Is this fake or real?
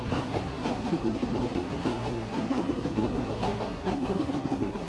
fake